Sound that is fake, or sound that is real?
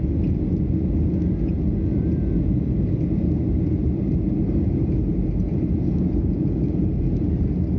real